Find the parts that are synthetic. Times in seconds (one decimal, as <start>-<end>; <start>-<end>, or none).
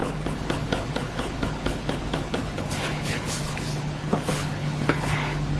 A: 0.0-5.6